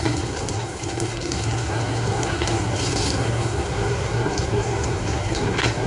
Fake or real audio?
fake